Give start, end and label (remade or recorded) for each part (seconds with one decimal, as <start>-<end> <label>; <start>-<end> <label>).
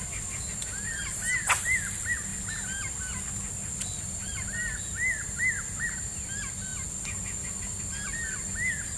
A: 0.0-9.0 recorded